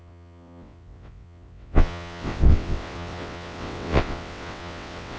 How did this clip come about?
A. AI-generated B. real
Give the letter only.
A